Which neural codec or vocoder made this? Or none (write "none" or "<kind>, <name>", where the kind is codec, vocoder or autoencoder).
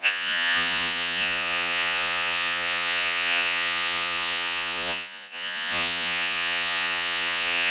vocoder, Vocos